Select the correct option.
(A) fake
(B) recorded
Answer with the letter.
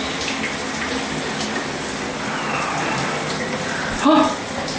B